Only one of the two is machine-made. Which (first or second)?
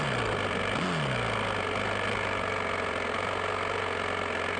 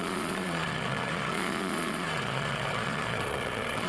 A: second